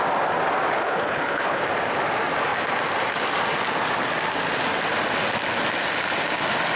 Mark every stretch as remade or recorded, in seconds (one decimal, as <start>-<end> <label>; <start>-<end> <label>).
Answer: 0.0-0.8 recorded; 0.8-1.6 remade; 1.6-6.8 recorded